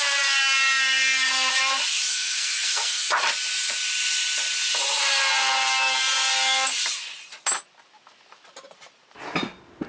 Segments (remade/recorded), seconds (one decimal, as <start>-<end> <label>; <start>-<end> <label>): 0.0-2.1 recorded; 2.1-3.1 remade; 3.1-9.9 recorded